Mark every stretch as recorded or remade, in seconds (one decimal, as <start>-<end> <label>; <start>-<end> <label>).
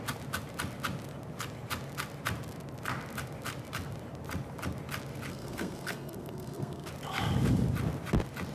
0.0-5.3 recorded; 5.3-6.9 remade; 6.9-8.5 recorded